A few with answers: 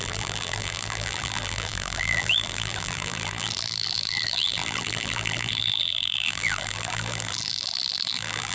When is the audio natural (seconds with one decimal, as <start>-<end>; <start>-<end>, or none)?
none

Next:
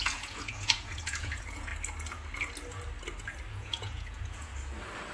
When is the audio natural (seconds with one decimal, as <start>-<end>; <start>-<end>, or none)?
1.7-3.5; 4.5-5.1

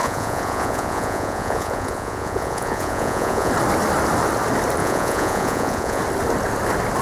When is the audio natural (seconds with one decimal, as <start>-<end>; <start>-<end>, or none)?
3.5-4.8; 6.0-7.0

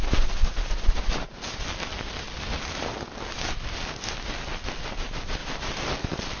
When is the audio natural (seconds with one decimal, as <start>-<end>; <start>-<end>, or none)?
0.0-0.4; 1.6-5.4; 6.0-6.4